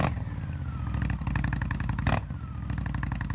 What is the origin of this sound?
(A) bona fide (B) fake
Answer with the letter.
A